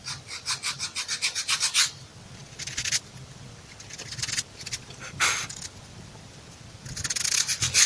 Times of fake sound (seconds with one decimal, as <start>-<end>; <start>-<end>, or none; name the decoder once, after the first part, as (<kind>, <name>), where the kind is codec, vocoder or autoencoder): none